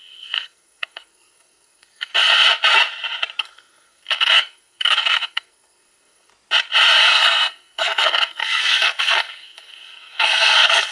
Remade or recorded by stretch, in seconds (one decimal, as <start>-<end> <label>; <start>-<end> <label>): 0.0-2.1 remade; 2.1-3.4 recorded; 3.4-6.3 remade; 6.3-7.0 recorded; 7.0-10.9 remade